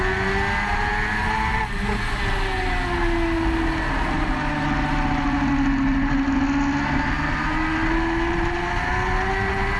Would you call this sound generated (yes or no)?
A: no